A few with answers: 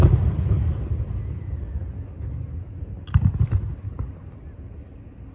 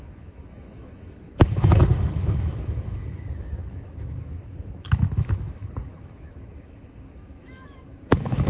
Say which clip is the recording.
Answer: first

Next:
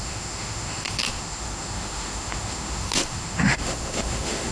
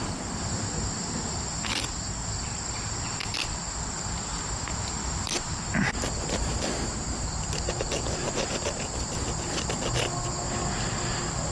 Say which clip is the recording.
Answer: second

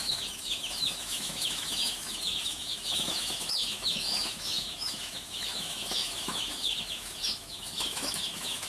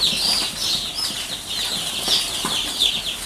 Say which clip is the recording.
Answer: second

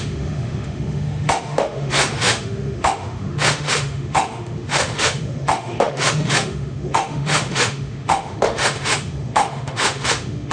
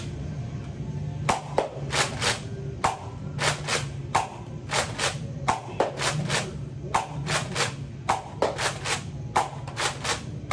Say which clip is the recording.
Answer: second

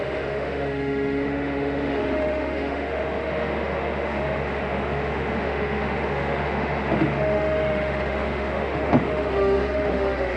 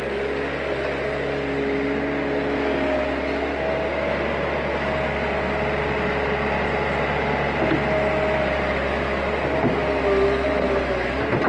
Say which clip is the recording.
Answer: second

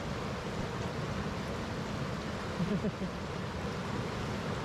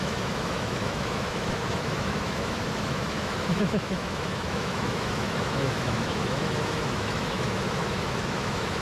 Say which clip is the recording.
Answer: first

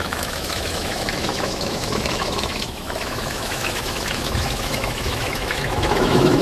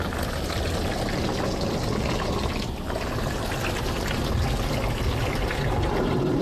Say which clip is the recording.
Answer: second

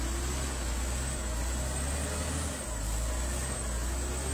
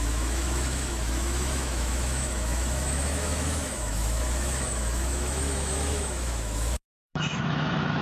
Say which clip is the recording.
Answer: first